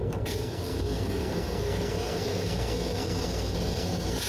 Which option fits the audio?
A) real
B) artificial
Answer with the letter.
B